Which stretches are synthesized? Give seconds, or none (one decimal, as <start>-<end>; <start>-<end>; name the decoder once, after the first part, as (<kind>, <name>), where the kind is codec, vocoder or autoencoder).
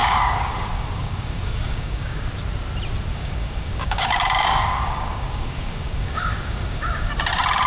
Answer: 0.0-2.3 (codec, DAC); 3.1-7.1